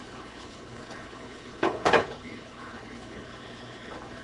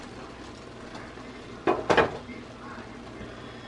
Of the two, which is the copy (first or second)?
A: first